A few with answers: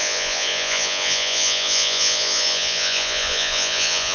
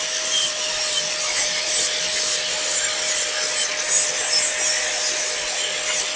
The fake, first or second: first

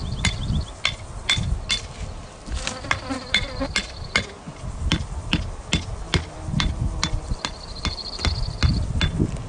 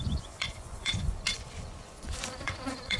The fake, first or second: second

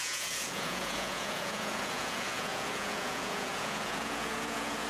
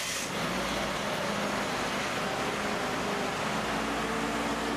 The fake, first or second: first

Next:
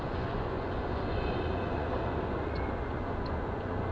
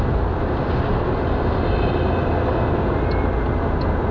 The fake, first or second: first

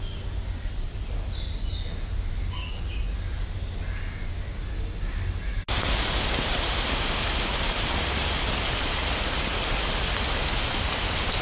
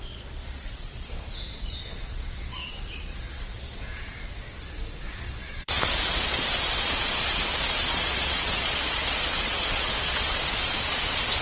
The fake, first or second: second